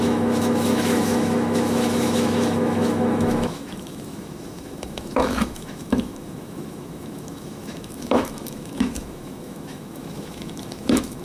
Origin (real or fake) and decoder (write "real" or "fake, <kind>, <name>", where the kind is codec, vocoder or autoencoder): fake, autoencoder, DAC-VAE